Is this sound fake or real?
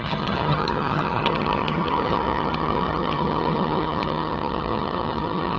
fake